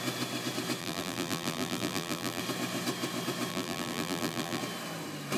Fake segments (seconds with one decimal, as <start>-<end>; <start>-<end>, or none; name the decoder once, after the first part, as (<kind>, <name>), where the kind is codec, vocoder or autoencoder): 0.8-2.4 (vocoder, BigVGAN v2); 3.5-4.6